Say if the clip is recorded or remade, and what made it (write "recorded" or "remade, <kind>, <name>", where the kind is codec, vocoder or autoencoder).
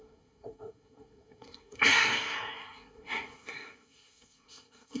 remade, codec, SNAC